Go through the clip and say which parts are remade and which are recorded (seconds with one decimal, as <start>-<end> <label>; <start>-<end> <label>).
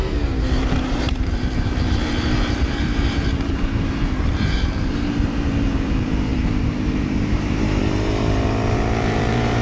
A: 0.0-9.6 remade